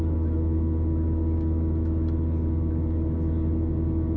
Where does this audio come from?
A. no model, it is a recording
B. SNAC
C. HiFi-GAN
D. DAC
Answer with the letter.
A